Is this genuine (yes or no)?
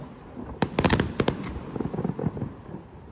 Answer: yes